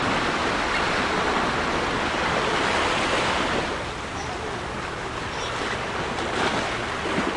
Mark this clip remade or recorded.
recorded